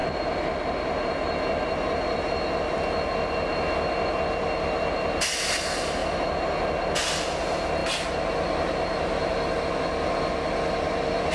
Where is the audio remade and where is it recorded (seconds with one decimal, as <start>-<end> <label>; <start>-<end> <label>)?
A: 0.0-11.3 recorded